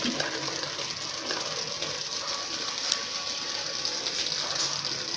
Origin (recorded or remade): recorded